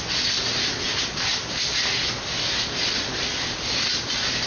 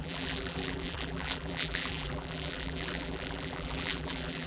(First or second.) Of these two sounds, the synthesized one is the second